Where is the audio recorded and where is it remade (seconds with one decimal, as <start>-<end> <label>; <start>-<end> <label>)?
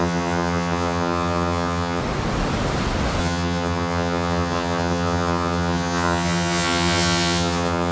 0.0-2.0 remade; 2.0-3.2 recorded; 3.2-7.9 remade